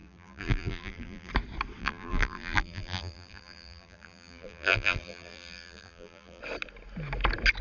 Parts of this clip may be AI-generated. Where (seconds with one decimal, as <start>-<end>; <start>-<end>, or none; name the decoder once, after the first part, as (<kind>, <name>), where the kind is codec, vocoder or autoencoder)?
0.0-1.3 (vocoder, BigVGAN v2); 1.8-6.4